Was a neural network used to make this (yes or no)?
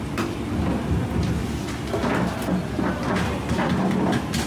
no